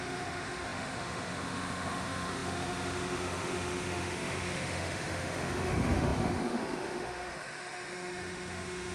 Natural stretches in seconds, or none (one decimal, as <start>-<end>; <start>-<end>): none